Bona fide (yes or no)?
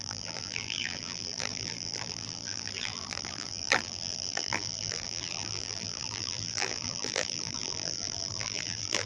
no